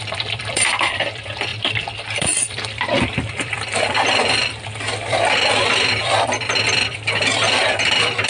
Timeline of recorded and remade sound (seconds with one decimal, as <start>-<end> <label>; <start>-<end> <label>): 0.0-8.3 remade